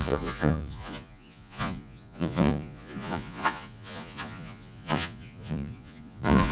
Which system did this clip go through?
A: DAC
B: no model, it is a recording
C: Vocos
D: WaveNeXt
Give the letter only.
C